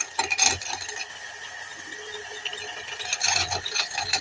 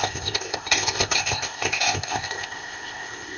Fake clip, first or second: second